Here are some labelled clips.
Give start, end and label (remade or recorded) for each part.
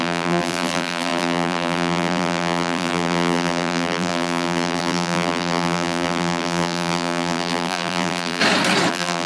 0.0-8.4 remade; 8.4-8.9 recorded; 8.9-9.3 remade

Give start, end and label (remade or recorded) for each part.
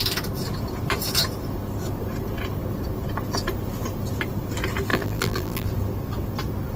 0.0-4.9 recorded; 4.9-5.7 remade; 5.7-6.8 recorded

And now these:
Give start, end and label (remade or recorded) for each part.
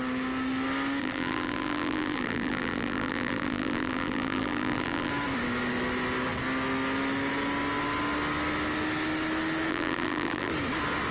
0.0-1.0 recorded; 1.0-5.1 remade; 5.1-9.7 recorded; 9.7-10.5 remade; 10.5-11.1 recorded